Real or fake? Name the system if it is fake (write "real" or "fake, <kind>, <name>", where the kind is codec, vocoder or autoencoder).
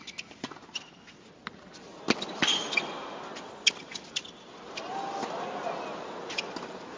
real